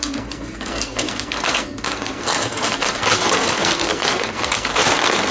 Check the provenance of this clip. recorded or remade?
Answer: remade